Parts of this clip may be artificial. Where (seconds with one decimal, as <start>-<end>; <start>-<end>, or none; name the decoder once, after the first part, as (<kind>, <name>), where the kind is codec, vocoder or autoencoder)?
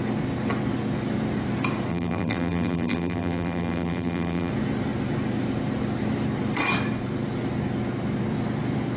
1.9-4.5 (vocoder, BigVGAN v2)